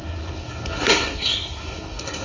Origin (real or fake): fake